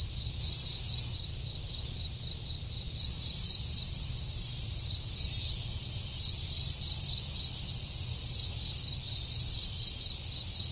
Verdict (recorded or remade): recorded